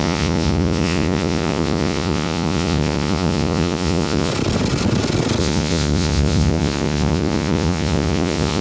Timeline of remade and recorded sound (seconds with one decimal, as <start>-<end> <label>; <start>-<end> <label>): 0.0-4.3 remade; 4.3-5.4 recorded; 5.4-8.6 remade